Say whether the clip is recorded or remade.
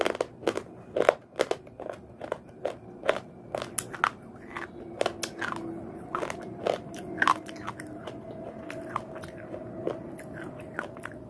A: recorded